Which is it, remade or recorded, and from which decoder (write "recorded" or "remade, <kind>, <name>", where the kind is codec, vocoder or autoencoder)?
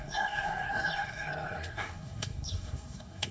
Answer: remade, codec, SNAC